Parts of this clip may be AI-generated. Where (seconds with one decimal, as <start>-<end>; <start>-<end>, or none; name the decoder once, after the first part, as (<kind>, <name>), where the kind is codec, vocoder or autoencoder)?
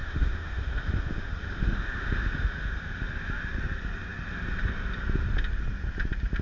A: 0.0-2.8 (autoencoder, DAC-VAE)